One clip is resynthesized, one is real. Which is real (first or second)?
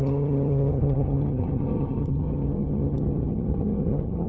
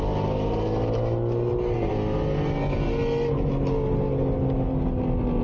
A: second